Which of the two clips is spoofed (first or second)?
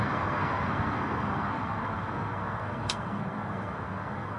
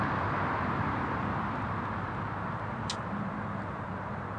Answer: first